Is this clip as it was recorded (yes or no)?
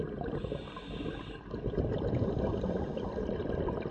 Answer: yes